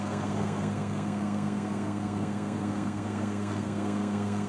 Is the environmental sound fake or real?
fake